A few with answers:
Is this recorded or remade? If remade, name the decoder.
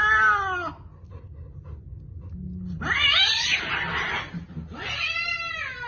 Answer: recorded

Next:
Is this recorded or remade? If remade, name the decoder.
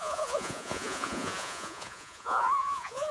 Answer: remade, vocoder, Vocos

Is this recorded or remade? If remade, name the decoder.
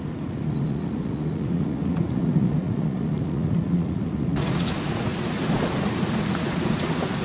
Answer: remade, vocoder, Vocos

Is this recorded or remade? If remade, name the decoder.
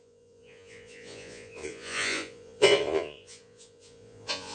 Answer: remade, vocoder, Vocos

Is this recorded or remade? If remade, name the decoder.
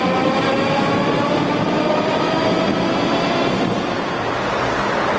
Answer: recorded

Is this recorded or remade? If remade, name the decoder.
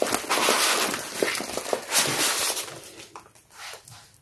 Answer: recorded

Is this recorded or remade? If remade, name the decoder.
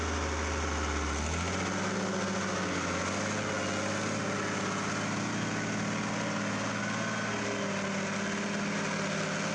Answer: recorded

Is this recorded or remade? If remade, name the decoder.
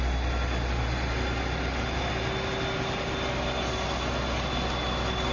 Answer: recorded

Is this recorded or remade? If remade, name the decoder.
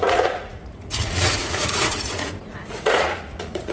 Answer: remade, vocoder, Vocos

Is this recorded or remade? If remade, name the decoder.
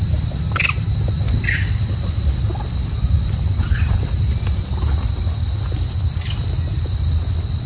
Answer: recorded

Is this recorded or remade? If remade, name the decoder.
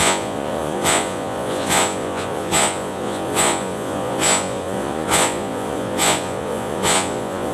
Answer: remade, vocoder, Vocos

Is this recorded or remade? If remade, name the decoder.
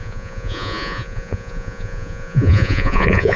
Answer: remade, vocoder, Vocos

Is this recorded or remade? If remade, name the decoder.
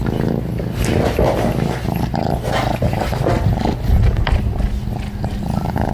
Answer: recorded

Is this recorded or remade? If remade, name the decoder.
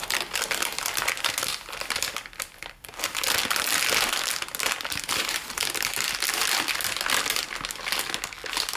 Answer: recorded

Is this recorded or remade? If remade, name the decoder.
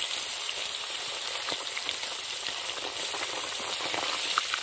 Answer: recorded